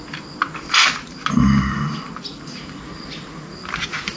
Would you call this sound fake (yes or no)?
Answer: no